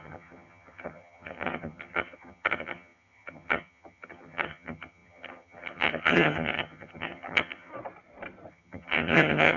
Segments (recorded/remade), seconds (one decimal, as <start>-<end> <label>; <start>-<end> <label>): 0.0-7.7 remade; 7.7-8.5 recorded; 8.5-9.6 remade